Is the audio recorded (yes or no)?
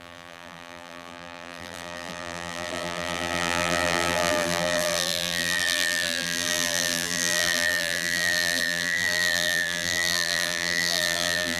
no